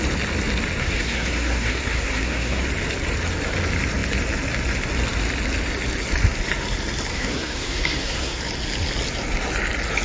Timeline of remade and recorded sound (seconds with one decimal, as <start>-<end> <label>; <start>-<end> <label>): 0.0-0.8 recorded; 0.8-2.6 remade; 2.6-7.1 recorded; 7.1-8.4 remade; 8.4-10.0 recorded